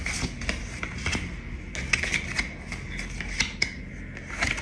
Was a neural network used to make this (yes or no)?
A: no